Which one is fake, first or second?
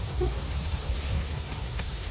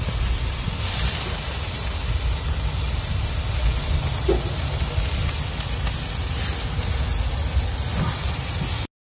first